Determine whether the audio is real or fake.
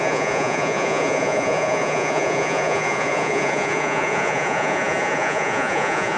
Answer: fake